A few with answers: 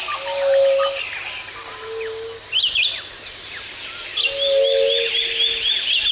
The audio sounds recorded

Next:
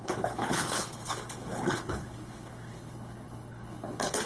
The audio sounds remade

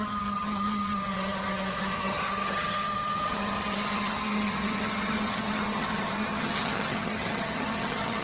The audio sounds remade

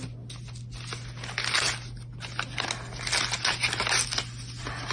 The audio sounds recorded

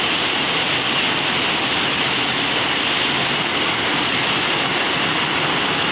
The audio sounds recorded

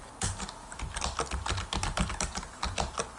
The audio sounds recorded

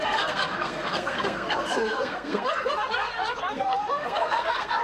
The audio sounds remade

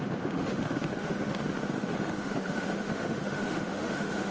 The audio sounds remade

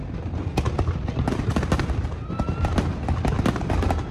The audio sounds recorded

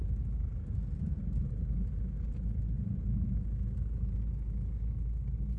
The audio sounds recorded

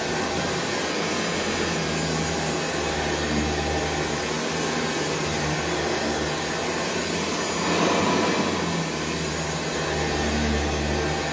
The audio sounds recorded